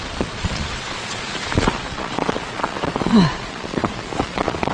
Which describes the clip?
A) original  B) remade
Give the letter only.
B